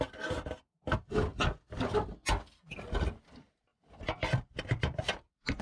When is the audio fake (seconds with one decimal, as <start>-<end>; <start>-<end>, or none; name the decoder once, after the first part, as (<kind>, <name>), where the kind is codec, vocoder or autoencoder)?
none